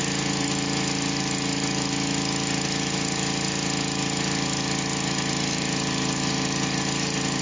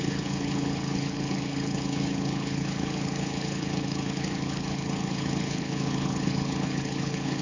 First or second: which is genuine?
first